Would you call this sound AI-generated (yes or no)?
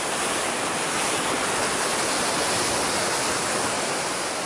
no